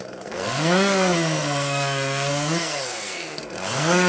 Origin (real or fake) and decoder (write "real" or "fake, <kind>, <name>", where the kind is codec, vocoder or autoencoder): fake, codec, SNAC